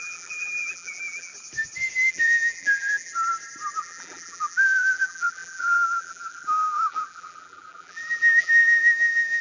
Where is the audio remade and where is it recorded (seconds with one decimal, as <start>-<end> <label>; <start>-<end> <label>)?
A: 0.0-1.3 remade; 1.3-2.1 recorded; 2.1-3.1 remade; 3.1-3.8 recorded; 3.8-9.4 remade